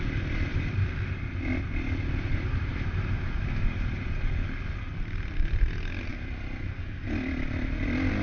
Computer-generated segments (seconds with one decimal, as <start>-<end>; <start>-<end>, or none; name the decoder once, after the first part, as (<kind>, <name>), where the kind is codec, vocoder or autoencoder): none